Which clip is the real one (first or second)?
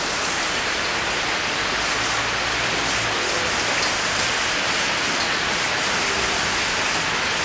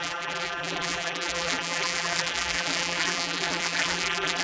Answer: first